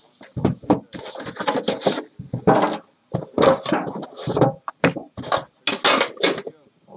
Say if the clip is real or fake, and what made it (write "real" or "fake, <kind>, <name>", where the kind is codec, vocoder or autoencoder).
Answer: real